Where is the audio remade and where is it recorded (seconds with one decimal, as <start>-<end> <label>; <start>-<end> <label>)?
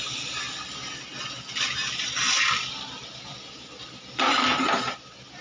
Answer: 0.0-5.4 recorded